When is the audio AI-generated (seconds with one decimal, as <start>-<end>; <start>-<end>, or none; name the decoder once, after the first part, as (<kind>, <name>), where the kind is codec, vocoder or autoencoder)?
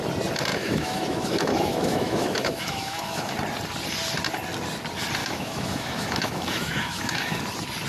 0.5-3.3 (autoencoder, DAC-VAE); 5.2-7.4